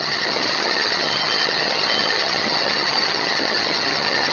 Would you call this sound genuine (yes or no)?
no